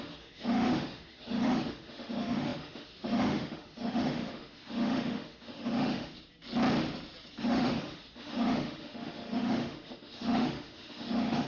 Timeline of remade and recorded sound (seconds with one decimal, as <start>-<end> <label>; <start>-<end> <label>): 0.0-6.1 remade; 6.1-7.4 recorded; 7.4-11.5 remade